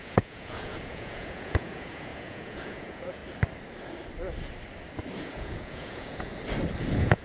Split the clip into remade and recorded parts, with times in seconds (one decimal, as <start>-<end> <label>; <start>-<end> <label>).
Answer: 0.0-3.2 remade; 3.2-5.2 recorded; 5.2-6.3 remade; 6.3-6.8 recorded; 6.8-7.2 remade